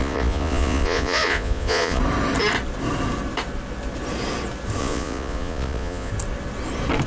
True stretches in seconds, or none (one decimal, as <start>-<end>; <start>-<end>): 2.0-4.8; 6.1-7.1